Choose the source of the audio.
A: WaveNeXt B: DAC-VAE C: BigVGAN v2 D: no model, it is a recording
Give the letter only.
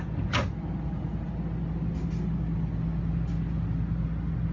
D